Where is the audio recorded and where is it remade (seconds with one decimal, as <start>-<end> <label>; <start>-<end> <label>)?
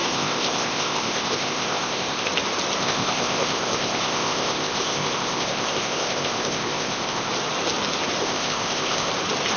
0.0-2.3 remade; 2.3-2.8 recorded; 2.8-7.3 remade; 7.3-8.2 recorded; 8.2-9.1 remade; 9.1-9.6 recorded